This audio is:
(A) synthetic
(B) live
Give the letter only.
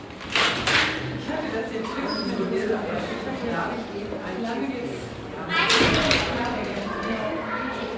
B